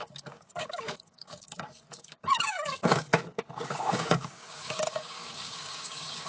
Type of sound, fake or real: fake